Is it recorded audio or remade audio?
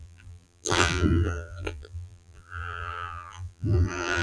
remade